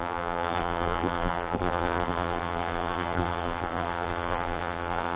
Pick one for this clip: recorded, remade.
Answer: remade